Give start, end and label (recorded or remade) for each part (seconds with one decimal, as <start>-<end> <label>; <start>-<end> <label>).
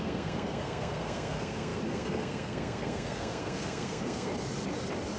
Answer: 0.0-4.3 remade; 4.3-5.2 recorded